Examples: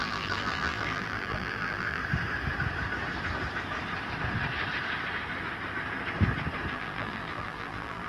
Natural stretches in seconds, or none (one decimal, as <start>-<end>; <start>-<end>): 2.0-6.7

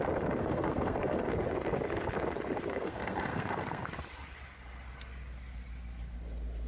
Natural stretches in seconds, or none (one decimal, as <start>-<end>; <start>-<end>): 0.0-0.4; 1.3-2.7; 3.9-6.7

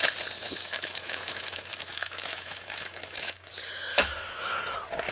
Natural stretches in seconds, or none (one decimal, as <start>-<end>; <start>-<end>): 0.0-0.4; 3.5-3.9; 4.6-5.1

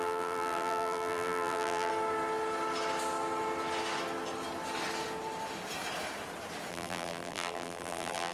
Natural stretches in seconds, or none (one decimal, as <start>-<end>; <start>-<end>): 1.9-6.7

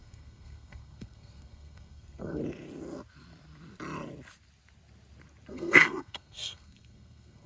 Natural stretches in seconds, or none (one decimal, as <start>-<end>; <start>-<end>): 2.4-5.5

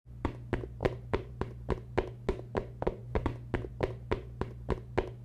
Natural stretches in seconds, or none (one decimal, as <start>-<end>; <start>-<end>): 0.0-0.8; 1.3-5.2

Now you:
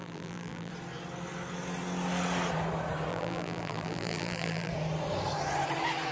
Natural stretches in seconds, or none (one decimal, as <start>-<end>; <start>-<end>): 0.7-3.1; 4.7-6.1